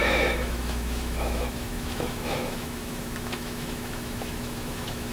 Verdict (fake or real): fake